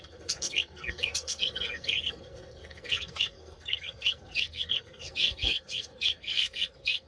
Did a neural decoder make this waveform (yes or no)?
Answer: yes